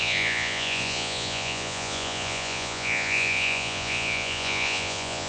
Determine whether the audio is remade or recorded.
remade